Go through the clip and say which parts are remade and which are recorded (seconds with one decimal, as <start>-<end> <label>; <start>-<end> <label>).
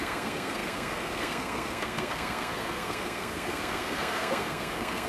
0.0-5.1 remade